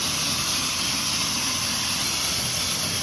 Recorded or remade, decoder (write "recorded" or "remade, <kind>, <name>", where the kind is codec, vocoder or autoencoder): remade, vocoder, BigVGAN v2